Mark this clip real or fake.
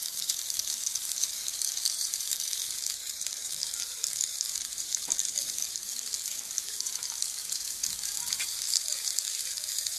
fake